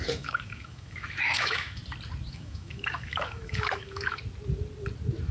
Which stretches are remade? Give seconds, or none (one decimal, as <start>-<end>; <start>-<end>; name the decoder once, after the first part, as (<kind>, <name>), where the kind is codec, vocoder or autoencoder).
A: 0.0-1.8 (autoencoder, DAC-VAE); 2.3-4.2